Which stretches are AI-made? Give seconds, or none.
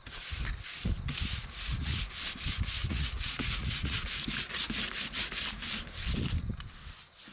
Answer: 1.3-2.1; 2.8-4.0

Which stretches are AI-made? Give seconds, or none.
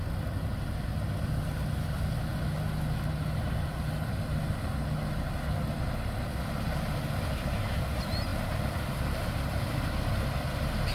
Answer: none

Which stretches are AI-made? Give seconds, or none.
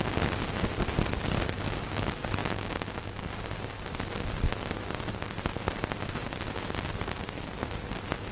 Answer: none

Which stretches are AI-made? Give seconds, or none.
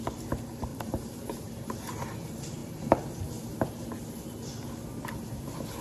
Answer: 0.7-1.9; 2.6-3.8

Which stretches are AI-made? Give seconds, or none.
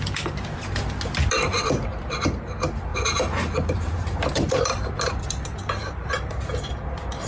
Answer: 2.9-5.2